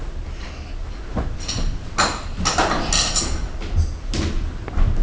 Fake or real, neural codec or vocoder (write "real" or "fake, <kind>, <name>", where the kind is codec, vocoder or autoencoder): real